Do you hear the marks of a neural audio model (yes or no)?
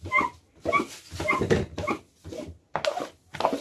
no